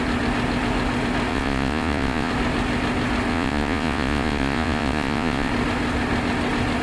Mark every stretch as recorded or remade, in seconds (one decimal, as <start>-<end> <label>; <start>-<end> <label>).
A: 0.0-1.3 recorded; 1.3-2.3 remade; 2.3-3.3 recorded; 3.3-5.5 remade; 5.5-6.8 recorded